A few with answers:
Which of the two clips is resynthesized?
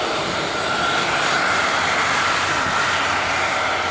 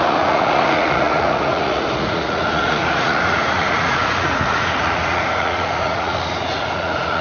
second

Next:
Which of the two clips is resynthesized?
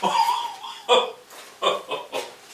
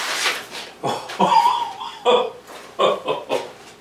second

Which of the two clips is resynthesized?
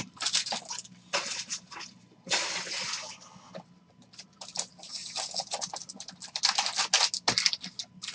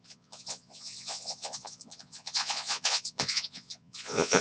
second